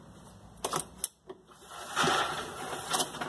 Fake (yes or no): no